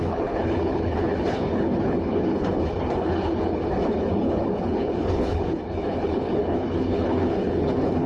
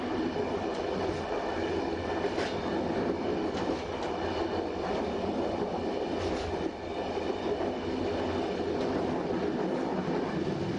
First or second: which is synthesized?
first